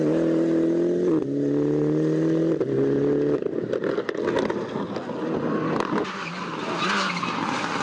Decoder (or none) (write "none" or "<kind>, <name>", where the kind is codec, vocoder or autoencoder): none